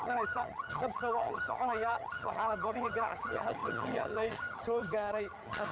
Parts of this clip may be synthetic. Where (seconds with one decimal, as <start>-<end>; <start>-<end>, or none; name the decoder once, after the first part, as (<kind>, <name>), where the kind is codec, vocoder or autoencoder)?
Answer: 0.0-5.7 (vocoder, HiFi-GAN)